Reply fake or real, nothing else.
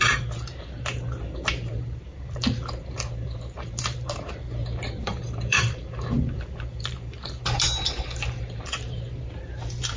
fake